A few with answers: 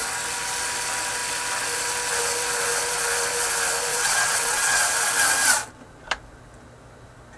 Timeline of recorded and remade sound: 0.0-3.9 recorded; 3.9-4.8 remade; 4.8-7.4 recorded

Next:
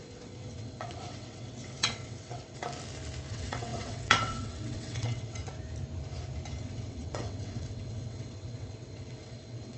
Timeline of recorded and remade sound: 0.0-2.6 remade; 2.6-3.3 recorded; 3.3-5.4 remade; 5.4-6.6 recorded; 6.6-9.8 remade

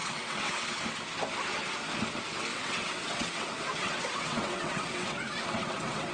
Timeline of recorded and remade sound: 0.0-0.8 remade; 0.8-2.5 recorded; 2.5-6.1 remade

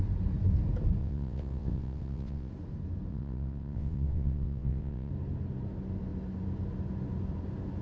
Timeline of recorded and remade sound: 0.0-1.0 recorded; 1.0-2.5 remade; 2.5-3.1 recorded; 3.1-5.1 remade; 5.1-7.8 recorded